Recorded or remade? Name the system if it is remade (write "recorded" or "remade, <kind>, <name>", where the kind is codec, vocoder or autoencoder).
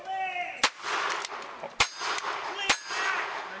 recorded